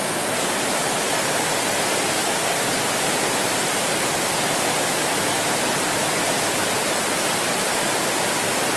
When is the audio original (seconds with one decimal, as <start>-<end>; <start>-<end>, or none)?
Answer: 0.0-8.8